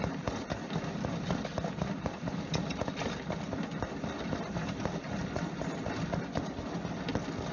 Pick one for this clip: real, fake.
real